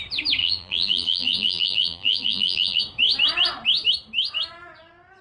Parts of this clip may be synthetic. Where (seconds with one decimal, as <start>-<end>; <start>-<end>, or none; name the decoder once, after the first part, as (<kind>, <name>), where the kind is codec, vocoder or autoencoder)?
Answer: 0.4-2.8 (vocoder, BigVGAN v2)